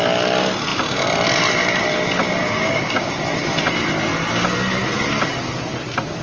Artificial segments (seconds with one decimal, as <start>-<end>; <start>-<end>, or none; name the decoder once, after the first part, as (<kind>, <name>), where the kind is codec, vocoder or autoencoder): 2.4-3.1 (codec, DAC)